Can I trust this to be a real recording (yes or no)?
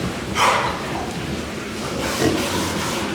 yes